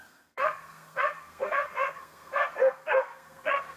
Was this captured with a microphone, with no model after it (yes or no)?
no